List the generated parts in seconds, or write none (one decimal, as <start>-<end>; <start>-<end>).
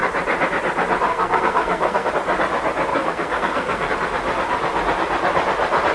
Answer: 1.1-2.1; 2.9-3.9